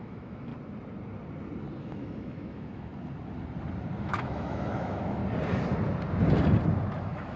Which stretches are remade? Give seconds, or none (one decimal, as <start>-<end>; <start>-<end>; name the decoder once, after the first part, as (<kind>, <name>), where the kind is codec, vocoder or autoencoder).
0.0-0.5 (autoencoder, DAC-VAE); 1.8-2.9; 4.0-5.2; 7.0-7.4